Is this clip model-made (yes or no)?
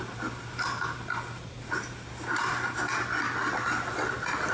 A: no